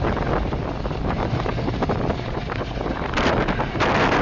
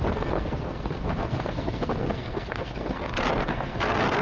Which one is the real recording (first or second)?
first